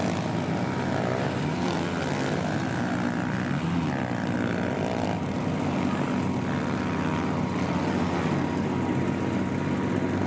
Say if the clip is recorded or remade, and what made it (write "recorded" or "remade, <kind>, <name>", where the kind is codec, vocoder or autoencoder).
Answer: recorded